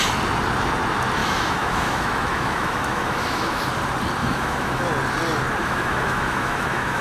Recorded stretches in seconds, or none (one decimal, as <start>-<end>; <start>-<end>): 0.0-1.2; 3.6-4.2; 4.8-5.6